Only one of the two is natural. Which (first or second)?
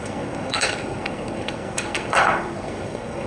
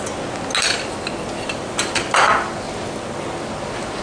second